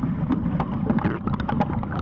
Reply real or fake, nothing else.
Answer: real